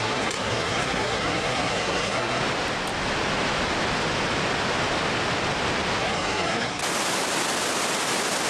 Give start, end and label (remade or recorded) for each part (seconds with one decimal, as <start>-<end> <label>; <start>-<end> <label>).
0.0-2.4 remade; 2.4-6.0 recorded; 6.0-6.8 remade; 6.8-8.5 recorded